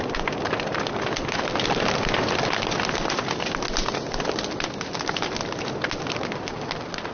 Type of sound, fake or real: real